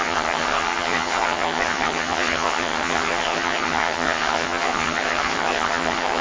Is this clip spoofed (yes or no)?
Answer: yes